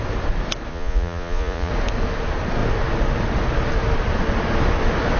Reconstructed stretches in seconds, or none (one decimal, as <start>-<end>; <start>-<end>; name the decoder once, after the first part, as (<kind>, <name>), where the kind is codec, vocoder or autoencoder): 0.7-1.7 (vocoder, Vocos)